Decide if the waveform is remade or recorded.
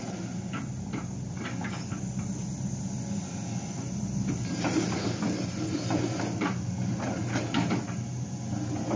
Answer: recorded